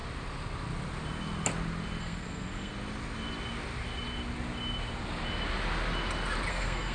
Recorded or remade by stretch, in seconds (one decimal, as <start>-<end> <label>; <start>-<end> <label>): 0.0-2.0 recorded; 2.0-2.7 remade; 2.7-6.5 recorded; 6.5-6.9 remade